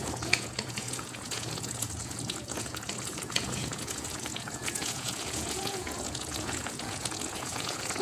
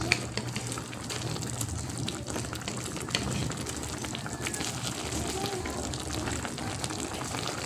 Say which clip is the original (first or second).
second